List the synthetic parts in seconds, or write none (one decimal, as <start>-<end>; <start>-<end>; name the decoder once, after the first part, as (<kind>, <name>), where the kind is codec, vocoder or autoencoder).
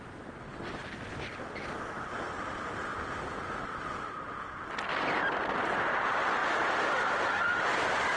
none